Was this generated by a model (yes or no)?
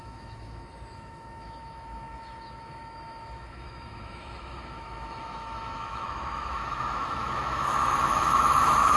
yes